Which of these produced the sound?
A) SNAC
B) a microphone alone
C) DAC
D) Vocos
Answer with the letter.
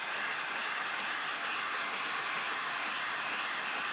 B